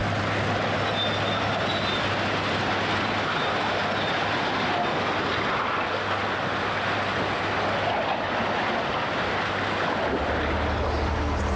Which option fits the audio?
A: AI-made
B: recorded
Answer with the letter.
B